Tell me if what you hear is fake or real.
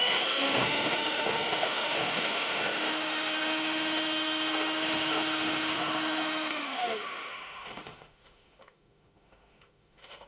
fake